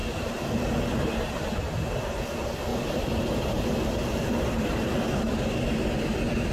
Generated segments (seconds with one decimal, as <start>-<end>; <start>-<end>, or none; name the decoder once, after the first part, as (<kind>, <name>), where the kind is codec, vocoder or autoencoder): 0.0-1.3 (vocoder, BigVGAN v2); 2.7-5.2